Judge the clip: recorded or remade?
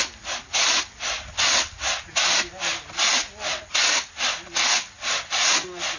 recorded